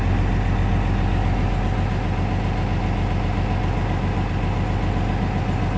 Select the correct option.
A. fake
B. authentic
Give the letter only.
B